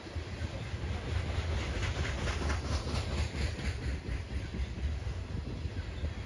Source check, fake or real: real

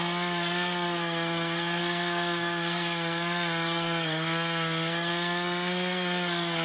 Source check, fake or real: fake